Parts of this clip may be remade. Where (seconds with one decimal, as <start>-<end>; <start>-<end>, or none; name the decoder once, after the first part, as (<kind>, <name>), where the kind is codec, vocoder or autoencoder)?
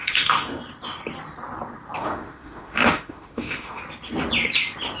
0.0-0.6 (autoencoder, DAC-VAE); 2.0-3.8